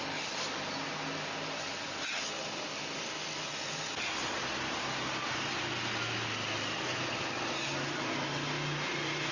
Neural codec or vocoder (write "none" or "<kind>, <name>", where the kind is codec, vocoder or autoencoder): none